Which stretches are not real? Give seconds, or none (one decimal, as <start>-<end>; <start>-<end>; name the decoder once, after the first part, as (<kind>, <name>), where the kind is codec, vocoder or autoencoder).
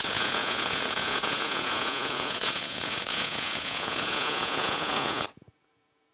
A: 0.0-6.1 (vocoder, Vocos)